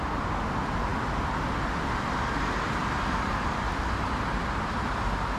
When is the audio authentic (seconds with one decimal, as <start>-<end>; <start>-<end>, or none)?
0.0-2.8; 3.9-5.4

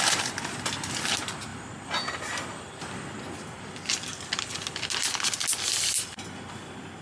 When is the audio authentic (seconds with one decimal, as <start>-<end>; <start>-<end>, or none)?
0.0-7.0